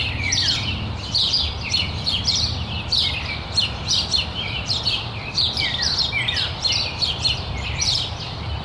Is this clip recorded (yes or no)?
no